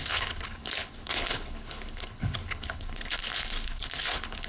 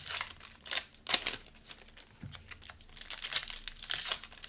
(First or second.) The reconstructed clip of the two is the first